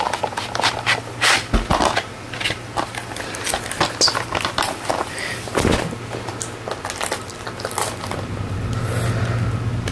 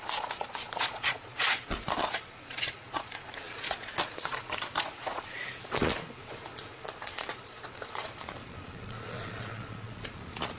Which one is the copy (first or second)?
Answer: second